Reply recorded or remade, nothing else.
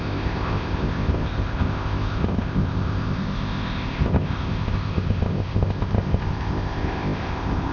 remade